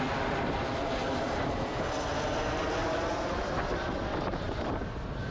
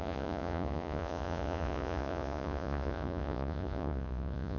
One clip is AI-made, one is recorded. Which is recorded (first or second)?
first